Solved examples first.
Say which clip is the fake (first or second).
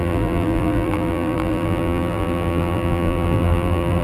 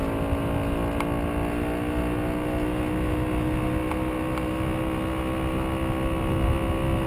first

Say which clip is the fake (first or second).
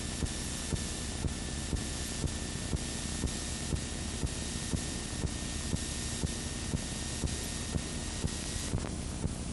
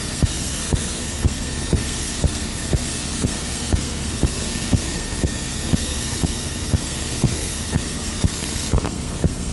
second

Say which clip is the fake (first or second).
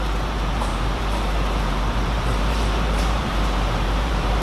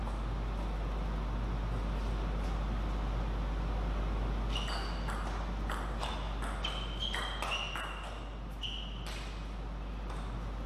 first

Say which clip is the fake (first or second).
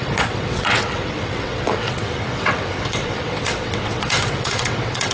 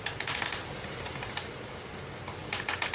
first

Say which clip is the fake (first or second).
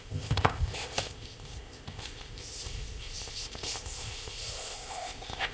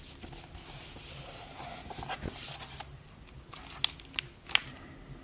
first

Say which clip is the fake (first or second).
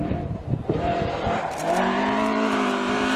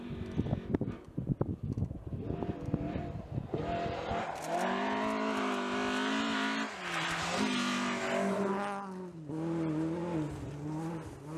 first